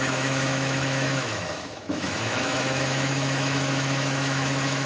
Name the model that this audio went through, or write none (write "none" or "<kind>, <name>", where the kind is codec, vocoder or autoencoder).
autoencoder, DAC-VAE